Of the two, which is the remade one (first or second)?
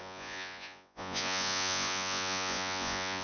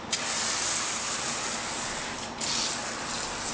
first